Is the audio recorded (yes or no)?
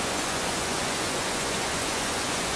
no